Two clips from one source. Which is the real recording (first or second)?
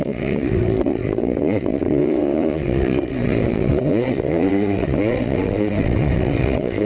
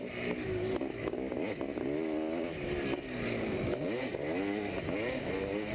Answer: second